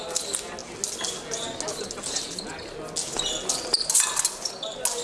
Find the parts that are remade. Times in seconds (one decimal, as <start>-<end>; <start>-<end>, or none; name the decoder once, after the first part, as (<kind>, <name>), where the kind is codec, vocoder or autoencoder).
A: none